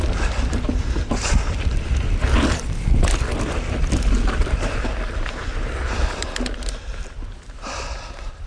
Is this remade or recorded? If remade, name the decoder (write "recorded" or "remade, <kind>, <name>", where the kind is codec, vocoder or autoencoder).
recorded